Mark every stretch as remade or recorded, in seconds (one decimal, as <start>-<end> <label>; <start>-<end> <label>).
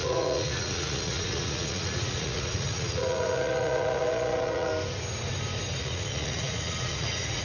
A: 0.0-4.7 remade; 4.7-5.8 recorded; 5.8-7.4 remade